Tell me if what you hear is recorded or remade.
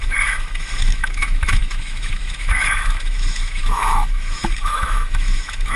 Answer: remade